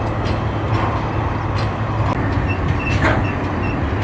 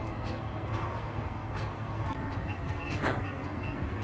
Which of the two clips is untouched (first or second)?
first